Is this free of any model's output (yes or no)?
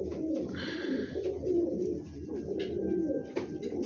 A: yes